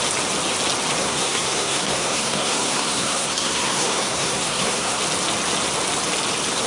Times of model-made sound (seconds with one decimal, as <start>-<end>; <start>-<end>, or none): 1.0-5.0